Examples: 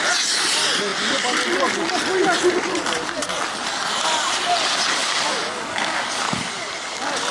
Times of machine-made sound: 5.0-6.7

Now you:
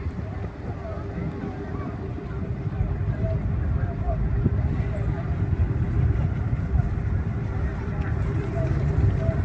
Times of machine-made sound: 0.0-0.8; 1.7-9.4

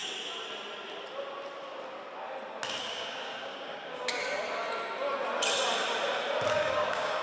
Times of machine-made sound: 2.8-4.2; 6.5-7.2

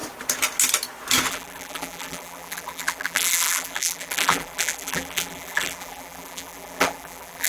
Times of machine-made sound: 1.3-7.5

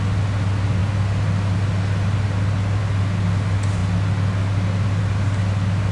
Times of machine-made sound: none

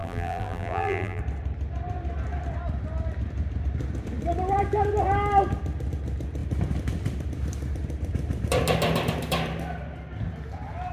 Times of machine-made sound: 0.0-1.2